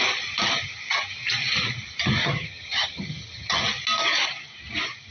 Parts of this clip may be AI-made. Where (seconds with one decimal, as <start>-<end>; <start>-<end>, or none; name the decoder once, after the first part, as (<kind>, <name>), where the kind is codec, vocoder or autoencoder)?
2.2-3.6 (vocoder, HiFi-GAN)